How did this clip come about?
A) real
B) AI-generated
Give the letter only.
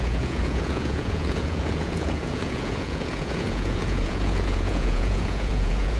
B